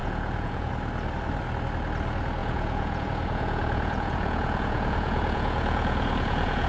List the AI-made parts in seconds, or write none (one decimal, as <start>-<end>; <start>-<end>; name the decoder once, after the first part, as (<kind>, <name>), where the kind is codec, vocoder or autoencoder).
0.0-0.7 (vocoder, Vocos); 2.4-6.7